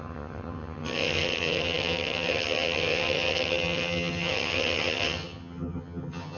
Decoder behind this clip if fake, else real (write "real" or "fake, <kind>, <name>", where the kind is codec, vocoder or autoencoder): fake, vocoder, HiFi-GAN